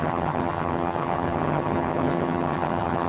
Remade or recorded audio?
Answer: remade